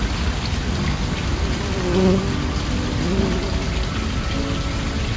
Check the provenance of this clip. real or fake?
real